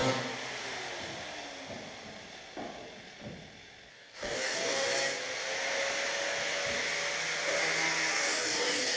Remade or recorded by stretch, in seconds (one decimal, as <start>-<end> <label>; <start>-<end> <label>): 0.0-3.9 recorded; 3.9-4.9 remade; 4.9-8.1 recorded; 8.1-9.0 remade